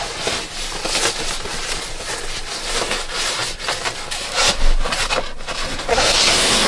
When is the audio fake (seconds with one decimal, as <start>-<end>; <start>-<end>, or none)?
5.9-6.7